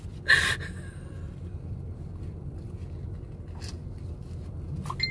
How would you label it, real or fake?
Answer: real